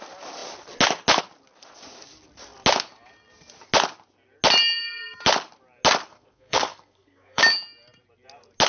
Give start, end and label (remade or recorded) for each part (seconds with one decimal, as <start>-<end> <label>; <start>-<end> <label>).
0.0-6.1 recorded; 6.1-7.4 remade; 7.4-8.7 recorded